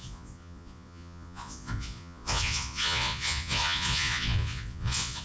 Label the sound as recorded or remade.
remade